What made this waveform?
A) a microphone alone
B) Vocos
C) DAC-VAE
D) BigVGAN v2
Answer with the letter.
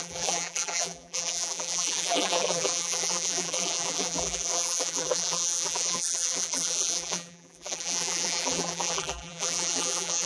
D